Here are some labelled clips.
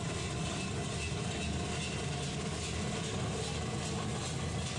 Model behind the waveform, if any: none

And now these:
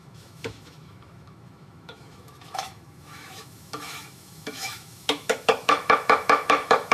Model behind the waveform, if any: autoencoder, DAC-VAE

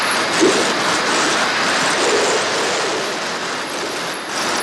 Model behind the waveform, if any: none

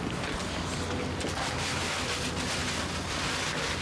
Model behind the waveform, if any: none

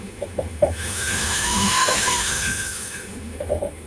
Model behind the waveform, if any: autoencoder, DAC-VAE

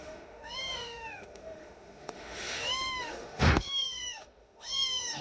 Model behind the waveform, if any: autoencoder, DAC-VAE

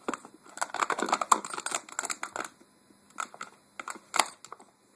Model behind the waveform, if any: none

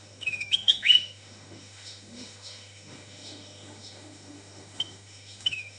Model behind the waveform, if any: autoencoder, DAC-VAE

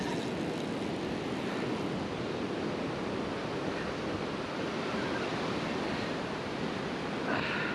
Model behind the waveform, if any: none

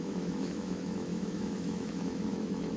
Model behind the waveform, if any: autoencoder, DAC-VAE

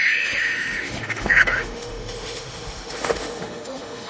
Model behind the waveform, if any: autoencoder, DAC-VAE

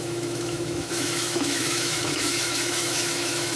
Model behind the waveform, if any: autoencoder, DAC-VAE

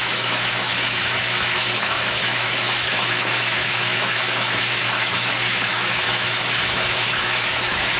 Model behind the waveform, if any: autoencoder, DAC-VAE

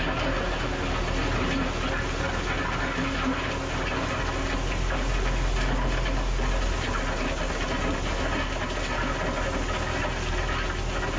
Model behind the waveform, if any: none